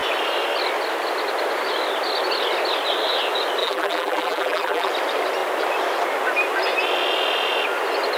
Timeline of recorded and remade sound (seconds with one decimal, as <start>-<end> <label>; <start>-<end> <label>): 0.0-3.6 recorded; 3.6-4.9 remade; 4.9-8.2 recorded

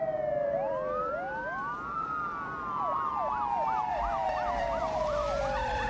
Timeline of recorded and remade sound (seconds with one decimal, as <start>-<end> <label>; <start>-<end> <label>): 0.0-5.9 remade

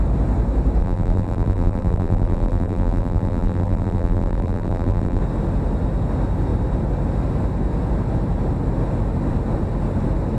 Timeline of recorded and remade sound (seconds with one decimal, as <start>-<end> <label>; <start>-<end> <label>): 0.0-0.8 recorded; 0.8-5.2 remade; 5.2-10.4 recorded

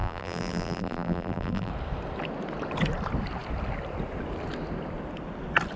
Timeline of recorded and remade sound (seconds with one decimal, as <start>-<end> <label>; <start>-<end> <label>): 0.0-1.7 remade; 1.7-5.8 recorded

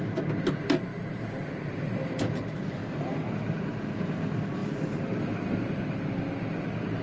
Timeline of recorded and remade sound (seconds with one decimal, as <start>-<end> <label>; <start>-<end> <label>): 0.0-0.9 recorded; 0.9-2.0 remade; 2.0-2.8 recorded; 2.8-3.3 remade; 3.3-4.6 recorded; 4.6-6.1 remade; 6.1-7.0 recorded

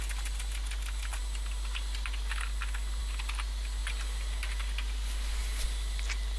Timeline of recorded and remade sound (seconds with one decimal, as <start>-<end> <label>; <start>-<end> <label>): 0.0-6.4 recorded